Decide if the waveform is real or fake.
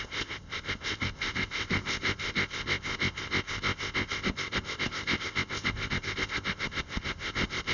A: fake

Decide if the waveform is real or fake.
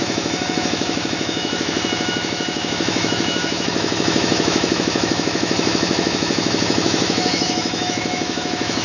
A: fake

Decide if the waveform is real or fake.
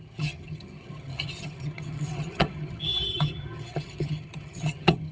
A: fake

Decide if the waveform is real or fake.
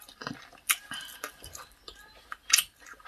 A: real